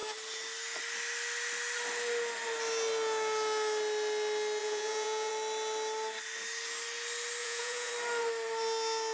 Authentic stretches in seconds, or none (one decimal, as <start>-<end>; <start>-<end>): 0.0-4.6; 5.3-7.4; 7.9-9.1